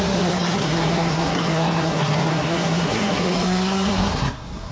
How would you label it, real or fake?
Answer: fake